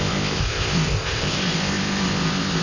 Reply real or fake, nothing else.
fake